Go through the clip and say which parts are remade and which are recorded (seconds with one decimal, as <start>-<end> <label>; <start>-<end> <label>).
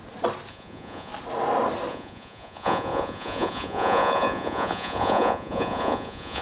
0.0-0.5 recorded; 0.5-1.1 remade; 1.1-1.9 recorded; 1.9-6.4 remade